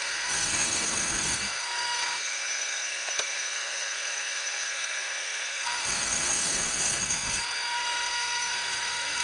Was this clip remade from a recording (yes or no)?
yes